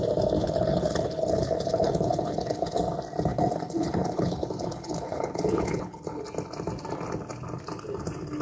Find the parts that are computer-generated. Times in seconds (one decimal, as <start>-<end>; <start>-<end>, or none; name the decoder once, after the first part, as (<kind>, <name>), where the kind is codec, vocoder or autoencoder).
0.4-2.8 (codec, HILCodec); 3.3-6.2

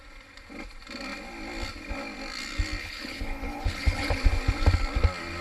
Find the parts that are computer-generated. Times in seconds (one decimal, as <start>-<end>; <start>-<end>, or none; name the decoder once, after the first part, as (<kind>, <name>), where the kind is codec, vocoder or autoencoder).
2.8-4.2 (codec, HILCodec)

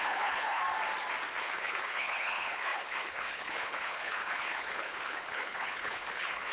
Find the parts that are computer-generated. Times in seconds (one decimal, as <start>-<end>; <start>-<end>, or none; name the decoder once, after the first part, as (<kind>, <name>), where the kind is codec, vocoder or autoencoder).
0.0-0.6 (codec, HILCodec); 1.4-6.5

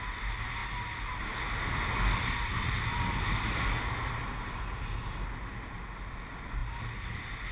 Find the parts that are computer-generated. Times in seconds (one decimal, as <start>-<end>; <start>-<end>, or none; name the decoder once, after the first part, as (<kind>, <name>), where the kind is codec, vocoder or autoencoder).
none